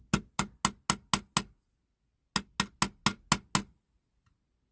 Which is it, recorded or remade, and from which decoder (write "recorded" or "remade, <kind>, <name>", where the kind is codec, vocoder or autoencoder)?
recorded